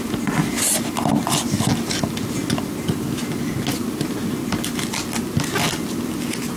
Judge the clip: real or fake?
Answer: real